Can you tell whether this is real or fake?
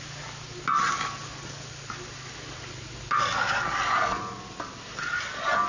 real